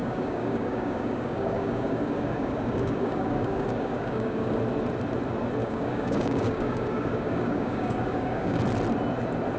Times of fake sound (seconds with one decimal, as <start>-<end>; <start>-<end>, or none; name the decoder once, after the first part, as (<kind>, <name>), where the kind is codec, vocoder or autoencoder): 0.0-4.6 (codec, DAC); 5.6-8.6